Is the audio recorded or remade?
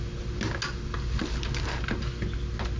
recorded